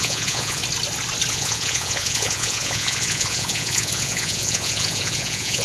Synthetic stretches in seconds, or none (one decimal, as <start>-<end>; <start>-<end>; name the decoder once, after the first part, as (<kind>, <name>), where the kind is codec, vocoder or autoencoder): 0.0-0.6 (vocoder, Vocos); 1.3-5.6